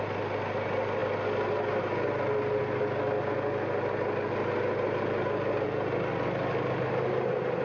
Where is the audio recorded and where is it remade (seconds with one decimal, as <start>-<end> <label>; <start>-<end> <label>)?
0.0-7.6 recorded